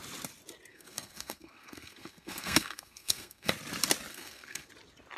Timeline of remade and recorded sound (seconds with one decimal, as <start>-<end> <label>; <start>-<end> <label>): 0.0-0.7 recorded; 0.7-3.5 remade; 3.5-4.1 recorded; 4.1-4.7 remade; 4.7-5.2 recorded